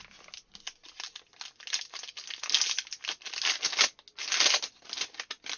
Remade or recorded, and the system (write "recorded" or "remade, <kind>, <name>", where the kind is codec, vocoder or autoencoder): recorded